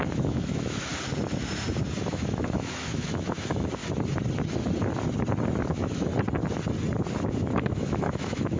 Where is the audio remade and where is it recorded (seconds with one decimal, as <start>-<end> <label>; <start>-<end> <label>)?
0.0-0.9 remade; 0.9-2.1 recorded; 2.1-3.8 remade; 3.8-5.6 recorded; 5.6-6.1 remade; 6.1-7.3 recorded; 7.3-8.6 remade